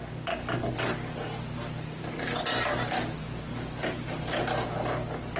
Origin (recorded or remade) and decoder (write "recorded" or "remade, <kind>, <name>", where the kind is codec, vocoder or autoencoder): recorded